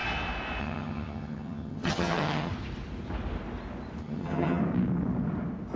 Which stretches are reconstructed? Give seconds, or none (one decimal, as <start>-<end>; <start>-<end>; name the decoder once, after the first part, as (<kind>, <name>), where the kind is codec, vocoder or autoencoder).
0.6-2.5 (vocoder, HiFi-GAN); 4.0-4.6